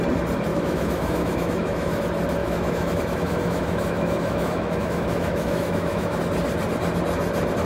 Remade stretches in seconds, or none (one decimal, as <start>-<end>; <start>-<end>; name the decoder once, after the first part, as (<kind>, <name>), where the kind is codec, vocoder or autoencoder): 0.5-2.0 (autoencoder, DAC-VAE); 2.4-6.2